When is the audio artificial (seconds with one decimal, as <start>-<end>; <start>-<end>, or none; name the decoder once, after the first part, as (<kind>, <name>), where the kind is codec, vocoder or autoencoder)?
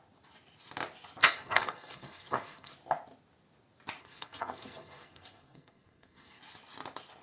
1.2-2.7 (codec, SNAC); 4.0-6.4